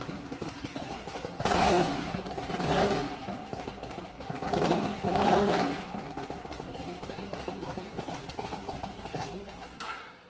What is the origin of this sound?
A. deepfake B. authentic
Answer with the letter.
A